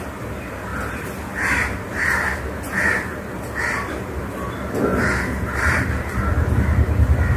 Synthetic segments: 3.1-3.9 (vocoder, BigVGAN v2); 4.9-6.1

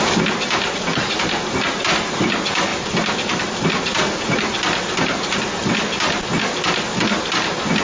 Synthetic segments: none

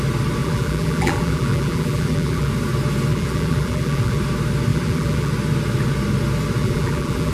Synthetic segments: 0.4-2.5 (vocoder, BigVGAN v2); 3.1-4.2; 4.7-5.3; 6.6-7.3

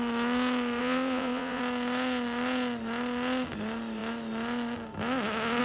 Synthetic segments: 0.8-1.6 (vocoder, Vocos)

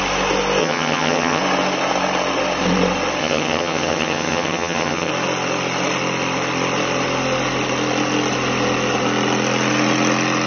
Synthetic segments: 0.6-1.4 (vocoder, HiFi-GAN); 3.2-5.1

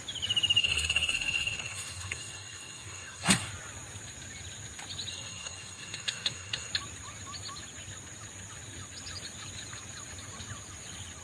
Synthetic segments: 0.6-3.5 (codec, SNAC); 5.1-6.7

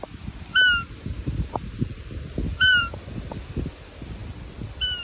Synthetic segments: 2.5-3.1 (vocoder, BigVGAN v2); 4.2-5.0

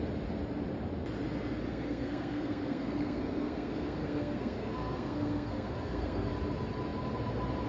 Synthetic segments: 1.7-6.3 (codec, SNAC)